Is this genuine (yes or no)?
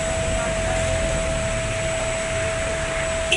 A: yes